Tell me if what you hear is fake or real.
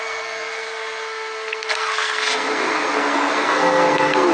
fake